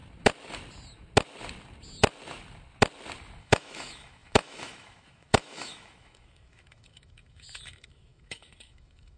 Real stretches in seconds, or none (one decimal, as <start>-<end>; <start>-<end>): 0.0-3.4